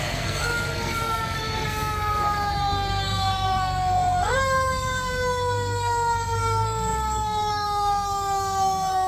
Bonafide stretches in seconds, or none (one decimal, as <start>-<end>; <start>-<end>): none

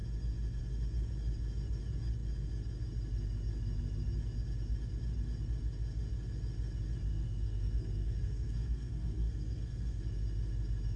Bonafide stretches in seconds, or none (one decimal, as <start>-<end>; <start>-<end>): 0.0-7.1; 10.0-11.0

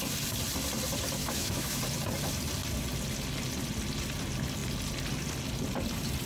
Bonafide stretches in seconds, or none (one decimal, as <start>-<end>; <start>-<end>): 0.0-1.2; 1.8-6.3

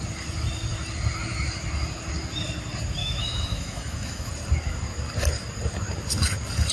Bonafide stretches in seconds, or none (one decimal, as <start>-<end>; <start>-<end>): 0.0-3.0; 4.3-6.7